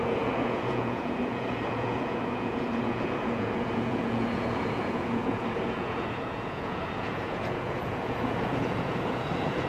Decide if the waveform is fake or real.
fake